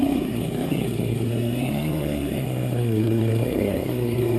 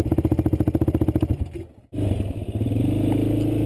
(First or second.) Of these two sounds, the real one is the second